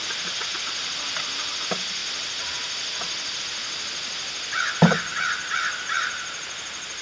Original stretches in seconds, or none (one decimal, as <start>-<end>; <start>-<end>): 0.0-2.0; 3.4-5.1; 5.8-7.0